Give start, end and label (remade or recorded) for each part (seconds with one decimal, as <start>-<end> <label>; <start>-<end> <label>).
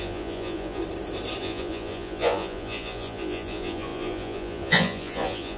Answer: 0.0-0.8 remade; 0.8-1.4 recorded; 1.4-5.6 remade